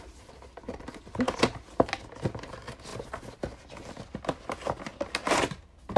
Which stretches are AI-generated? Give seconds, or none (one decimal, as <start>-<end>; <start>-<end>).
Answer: none